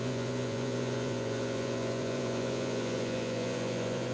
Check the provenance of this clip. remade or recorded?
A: remade